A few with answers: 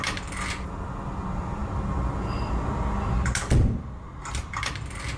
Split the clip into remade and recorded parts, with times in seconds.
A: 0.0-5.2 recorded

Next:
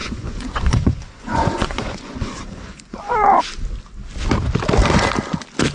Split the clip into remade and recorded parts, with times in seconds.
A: 0.0-3.4 remade; 3.4-5.7 recorded

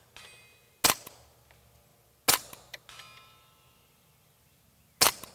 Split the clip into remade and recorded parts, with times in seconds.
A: 0.0-5.3 recorded

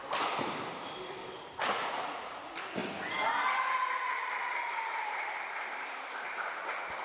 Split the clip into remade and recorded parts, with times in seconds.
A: 0.0-1.7 recorded; 1.7-2.3 remade; 2.3-7.0 recorded

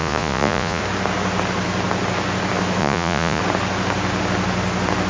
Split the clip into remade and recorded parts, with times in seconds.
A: 0.0-0.8 remade; 0.8-2.8 recorded; 2.8-3.4 remade; 3.4-5.1 recorded

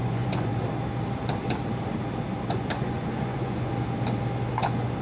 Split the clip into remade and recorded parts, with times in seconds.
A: 0.0-0.5 remade; 0.5-2.3 recorded; 2.3-3.7 remade; 3.7-4.5 recorded; 4.5-5.0 remade